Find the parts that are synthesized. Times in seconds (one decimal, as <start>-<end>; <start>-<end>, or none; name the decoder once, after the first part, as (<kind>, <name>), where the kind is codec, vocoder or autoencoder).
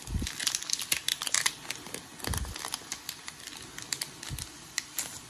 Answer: 1.1-2.0 (vocoder, BigVGAN v2)